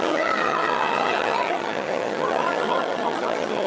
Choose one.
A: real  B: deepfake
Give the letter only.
B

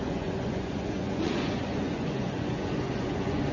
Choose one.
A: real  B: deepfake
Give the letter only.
B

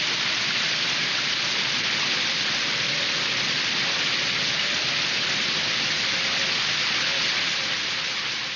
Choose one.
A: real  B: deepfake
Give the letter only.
A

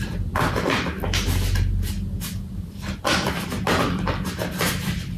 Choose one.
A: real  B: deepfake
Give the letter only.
A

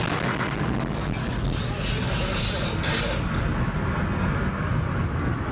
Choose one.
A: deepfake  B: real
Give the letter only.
B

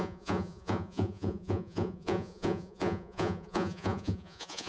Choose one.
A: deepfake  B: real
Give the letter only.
A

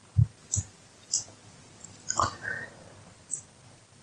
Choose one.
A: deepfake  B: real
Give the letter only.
B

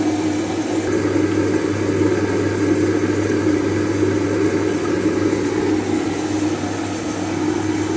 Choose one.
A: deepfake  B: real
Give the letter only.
B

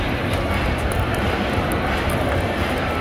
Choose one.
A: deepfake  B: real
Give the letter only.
B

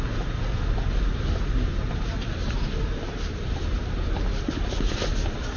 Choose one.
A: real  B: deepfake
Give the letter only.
A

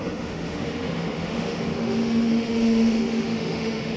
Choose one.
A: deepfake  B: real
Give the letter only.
A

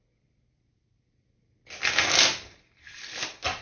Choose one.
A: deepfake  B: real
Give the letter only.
B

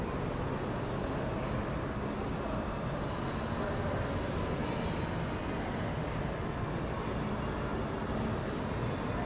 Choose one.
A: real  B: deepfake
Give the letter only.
A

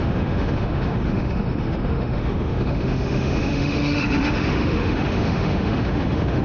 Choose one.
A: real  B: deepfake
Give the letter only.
B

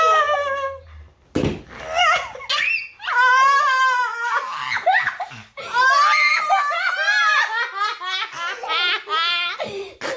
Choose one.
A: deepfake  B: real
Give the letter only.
B